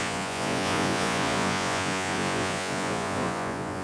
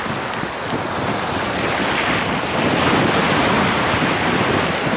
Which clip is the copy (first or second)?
first